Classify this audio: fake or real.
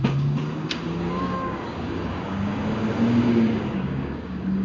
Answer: fake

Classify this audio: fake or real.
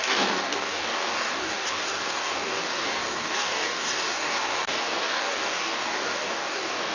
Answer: fake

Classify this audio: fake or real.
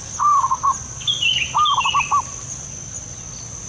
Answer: real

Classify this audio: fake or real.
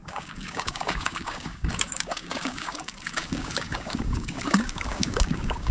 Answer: fake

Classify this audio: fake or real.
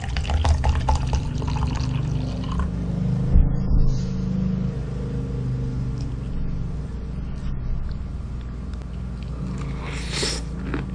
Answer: real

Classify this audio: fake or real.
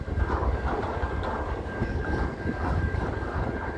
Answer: fake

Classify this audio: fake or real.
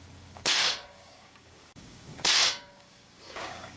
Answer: fake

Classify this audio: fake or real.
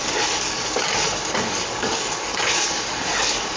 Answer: fake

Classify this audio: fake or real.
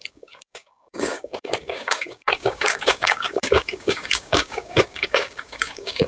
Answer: fake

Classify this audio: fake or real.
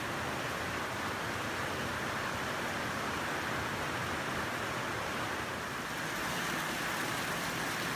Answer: real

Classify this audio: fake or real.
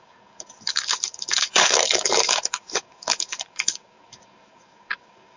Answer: fake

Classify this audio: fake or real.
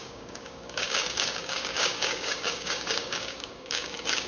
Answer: fake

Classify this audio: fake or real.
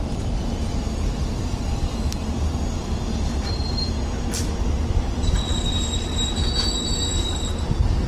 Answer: real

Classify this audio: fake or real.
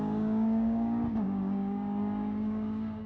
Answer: fake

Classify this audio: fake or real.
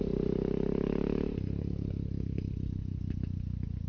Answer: real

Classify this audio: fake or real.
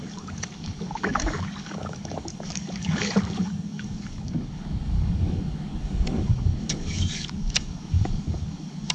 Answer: fake